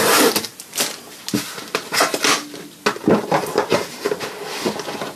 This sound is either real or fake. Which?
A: real